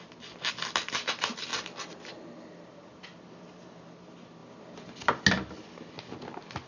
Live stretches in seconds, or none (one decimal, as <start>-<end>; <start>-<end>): 0.0-6.7